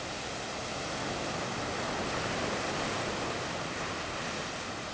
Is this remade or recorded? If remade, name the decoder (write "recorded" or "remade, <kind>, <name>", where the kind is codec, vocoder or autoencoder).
recorded